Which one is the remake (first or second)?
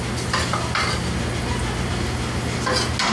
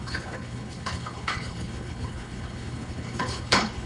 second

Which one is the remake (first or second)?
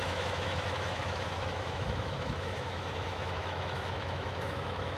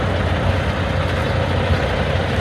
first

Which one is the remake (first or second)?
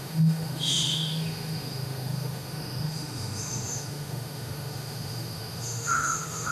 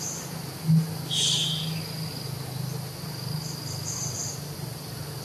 first